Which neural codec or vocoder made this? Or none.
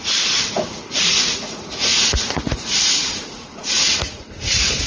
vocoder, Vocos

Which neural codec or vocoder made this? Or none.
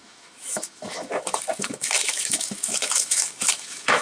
autoencoder, DAC-VAE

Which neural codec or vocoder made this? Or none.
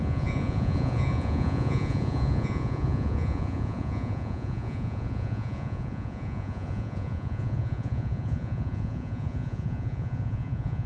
vocoder, Vocos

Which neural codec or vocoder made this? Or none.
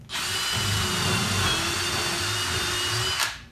none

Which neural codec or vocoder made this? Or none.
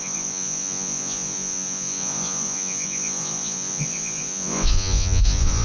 vocoder, Vocos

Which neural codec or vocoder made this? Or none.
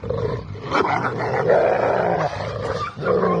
none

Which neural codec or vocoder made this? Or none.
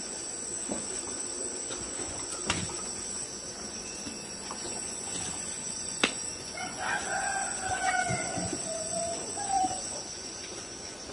vocoder, Vocos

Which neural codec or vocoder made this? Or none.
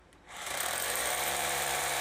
vocoder, BigVGAN v2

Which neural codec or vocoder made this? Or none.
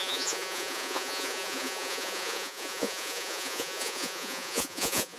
vocoder, Vocos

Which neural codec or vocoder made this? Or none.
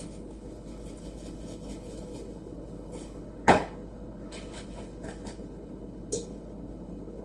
codec, HILCodec